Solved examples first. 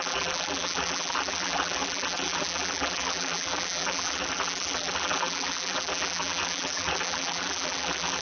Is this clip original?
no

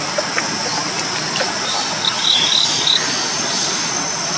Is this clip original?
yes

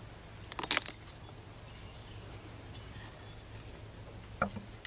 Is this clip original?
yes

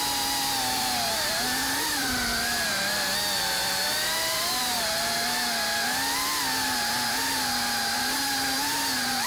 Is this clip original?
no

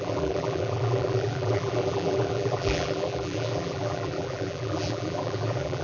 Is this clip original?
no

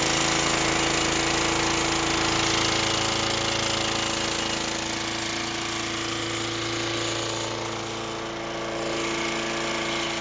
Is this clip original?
yes